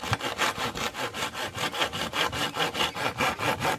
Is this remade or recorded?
recorded